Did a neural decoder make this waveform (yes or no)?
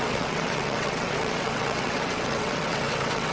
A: yes